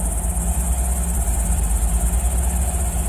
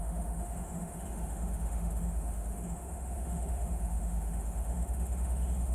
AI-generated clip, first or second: second